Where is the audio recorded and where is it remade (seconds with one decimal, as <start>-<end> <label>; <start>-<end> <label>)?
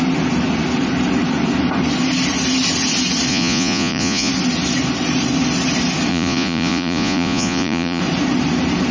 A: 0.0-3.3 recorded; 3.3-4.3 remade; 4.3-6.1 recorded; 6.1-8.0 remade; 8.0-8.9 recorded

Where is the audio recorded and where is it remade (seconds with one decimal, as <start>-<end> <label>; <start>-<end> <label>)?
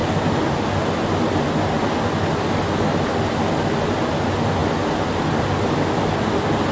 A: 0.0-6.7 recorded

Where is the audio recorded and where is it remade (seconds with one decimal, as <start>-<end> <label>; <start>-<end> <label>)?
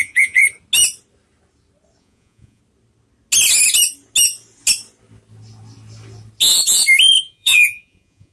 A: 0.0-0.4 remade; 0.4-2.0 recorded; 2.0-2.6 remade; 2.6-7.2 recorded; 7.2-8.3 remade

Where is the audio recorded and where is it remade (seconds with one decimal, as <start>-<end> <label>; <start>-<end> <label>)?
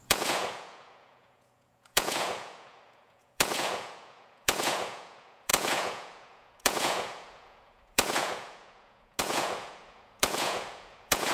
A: 0.0-11.3 remade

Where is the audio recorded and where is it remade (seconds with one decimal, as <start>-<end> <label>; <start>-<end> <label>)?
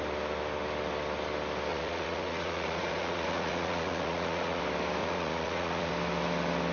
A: 0.0-1.7 recorded; 1.7-4.6 remade; 4.6-5.0 recorded; 5.0-5.9 remade; 5.9-6.7 recorded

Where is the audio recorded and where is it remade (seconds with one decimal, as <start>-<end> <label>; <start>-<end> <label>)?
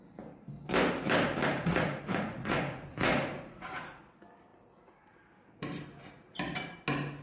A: 0.0-1.5 recorded; 1.5-4.0 remade; 4.0-7.2 recorded